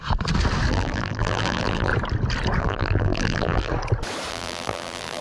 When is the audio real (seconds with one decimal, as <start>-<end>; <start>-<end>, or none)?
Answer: 0.0-0.7; 1.9-2.6; 3.7-4.3